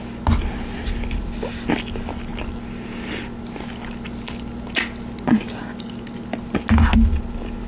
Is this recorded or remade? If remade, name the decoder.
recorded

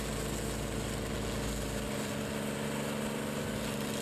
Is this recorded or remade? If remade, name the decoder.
recorded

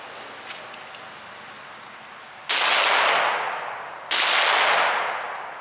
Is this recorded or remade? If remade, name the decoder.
recorded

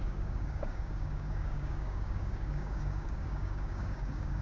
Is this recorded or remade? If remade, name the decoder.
remade, codec, DAC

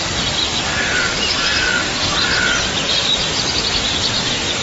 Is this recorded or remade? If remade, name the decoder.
recorded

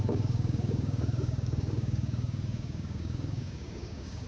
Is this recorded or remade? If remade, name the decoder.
remade, codec, DAC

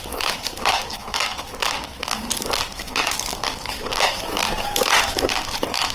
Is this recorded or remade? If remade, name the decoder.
remade, codec, DAC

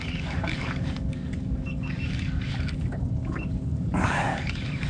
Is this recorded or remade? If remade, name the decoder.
remade, codec, DAC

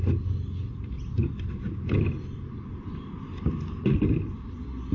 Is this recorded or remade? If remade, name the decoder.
recorded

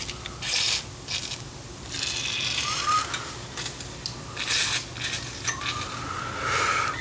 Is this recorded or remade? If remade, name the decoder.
recorded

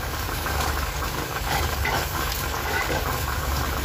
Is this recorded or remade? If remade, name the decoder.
remade, codec, DAC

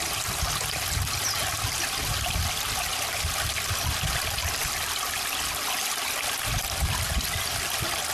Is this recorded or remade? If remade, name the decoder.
recorded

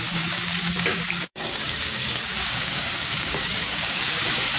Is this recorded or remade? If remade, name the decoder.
remade, codec, DAC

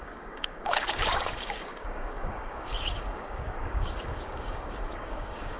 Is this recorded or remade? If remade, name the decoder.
remade, codec, DAC